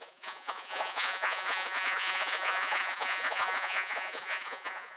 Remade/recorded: remade